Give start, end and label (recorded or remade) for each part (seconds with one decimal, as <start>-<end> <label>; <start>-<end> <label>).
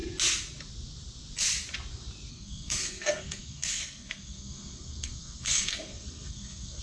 0.0-2.3 recorded; 2.3-6.8 remade